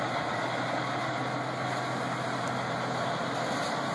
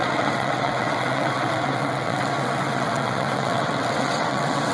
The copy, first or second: second